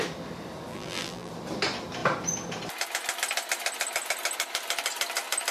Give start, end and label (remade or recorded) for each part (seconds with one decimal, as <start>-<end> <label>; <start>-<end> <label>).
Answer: 0.0-0.7 recorded; 0.7-1.3 remade; 1.3-5.5 recorded